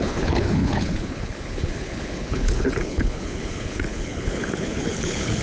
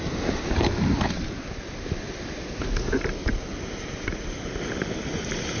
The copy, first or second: first